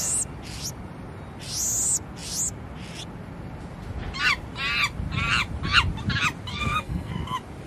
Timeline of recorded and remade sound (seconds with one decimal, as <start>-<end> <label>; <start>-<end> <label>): 0.0-6.5 recorded; 6.5-7.1 remade; 7.1-7.7 recorded